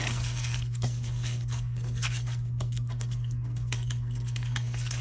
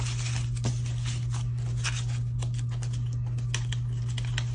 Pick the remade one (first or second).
first